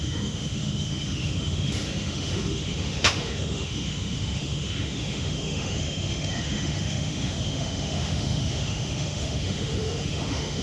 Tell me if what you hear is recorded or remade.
remade